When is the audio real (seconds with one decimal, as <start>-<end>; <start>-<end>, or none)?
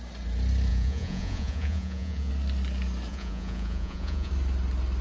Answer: 0.0-0.7; 2.3-3.1; 4.3-5.0